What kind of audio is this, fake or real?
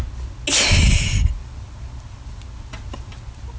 real